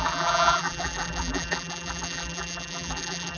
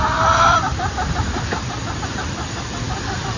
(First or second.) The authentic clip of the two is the second